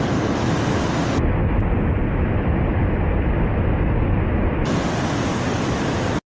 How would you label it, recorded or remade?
recorded